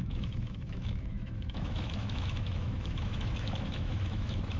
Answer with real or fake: fake